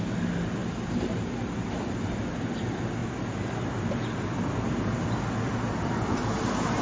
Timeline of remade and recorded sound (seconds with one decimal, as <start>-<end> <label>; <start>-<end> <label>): 0.0-6.8 recorded